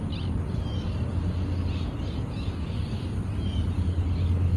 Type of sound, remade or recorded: recorded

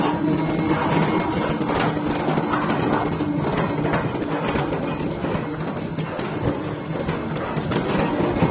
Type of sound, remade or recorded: recorded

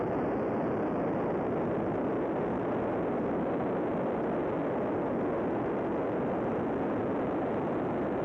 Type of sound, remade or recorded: recorded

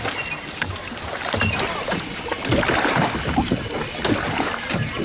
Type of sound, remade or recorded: recorded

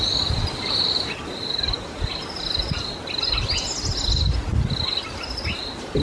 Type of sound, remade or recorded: recorded